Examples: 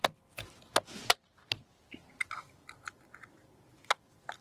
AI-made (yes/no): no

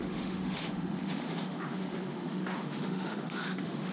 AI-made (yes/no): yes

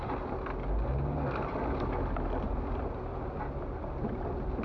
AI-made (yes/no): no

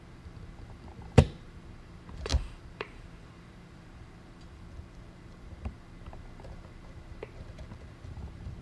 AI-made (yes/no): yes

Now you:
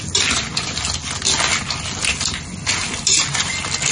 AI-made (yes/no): no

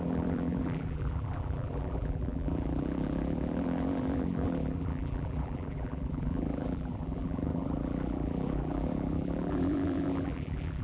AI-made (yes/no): yes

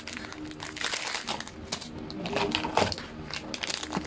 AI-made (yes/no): no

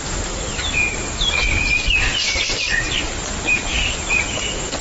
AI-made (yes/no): no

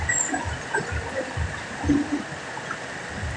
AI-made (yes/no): no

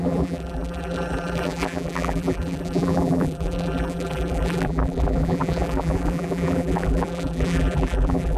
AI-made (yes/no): yes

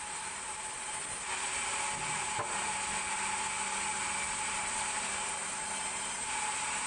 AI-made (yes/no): no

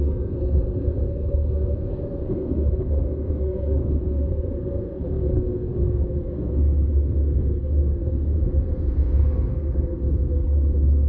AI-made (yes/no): yes